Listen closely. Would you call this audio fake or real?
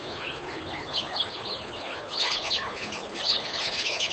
fake